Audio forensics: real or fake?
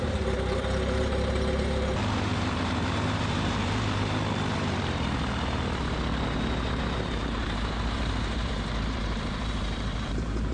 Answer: fake